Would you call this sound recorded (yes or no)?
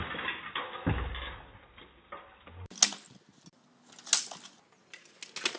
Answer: yes